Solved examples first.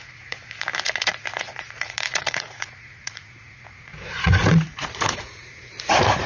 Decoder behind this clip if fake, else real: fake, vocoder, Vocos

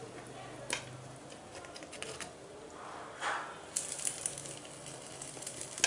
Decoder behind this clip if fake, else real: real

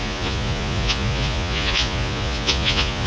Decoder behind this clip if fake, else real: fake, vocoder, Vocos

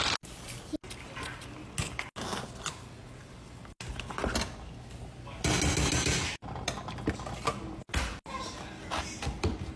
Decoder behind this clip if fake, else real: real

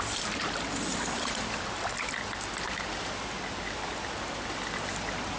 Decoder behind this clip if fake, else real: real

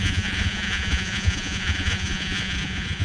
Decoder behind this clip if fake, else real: fake, vocoder, Vocos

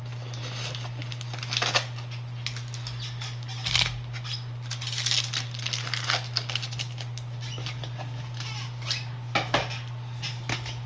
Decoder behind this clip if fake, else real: real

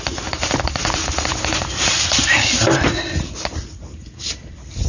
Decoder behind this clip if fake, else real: real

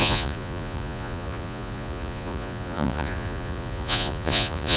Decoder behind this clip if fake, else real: fake, vocoder, Vocos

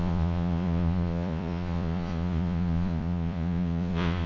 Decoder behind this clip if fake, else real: fake, vocoder, Vocos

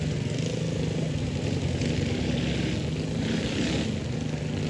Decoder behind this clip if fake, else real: real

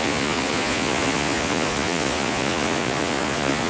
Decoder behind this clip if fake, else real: fake, vocoder, Vocos